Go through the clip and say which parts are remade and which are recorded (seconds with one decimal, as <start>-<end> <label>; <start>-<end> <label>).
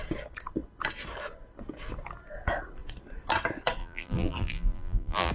0.0-3.8 recorded; 3.8-5.3 remade